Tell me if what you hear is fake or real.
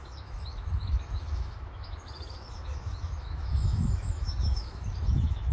fake